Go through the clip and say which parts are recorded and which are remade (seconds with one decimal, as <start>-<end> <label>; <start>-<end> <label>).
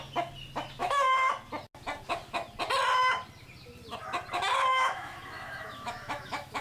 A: 0.0-0.8 recorded; 0.8-1.3 remade; 1.3-4.7 recorded; 4.7-6.6 remade